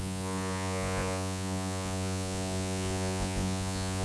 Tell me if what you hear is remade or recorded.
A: remade